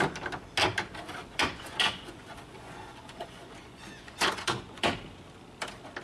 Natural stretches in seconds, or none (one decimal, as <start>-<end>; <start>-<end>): 0.0-1.2; 4.8-6.0